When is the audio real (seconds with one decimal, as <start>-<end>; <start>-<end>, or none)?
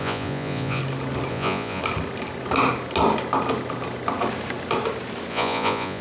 0.8-1.3; 1.8-5.3